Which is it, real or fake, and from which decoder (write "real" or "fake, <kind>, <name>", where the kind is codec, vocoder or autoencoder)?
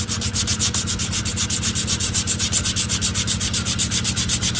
real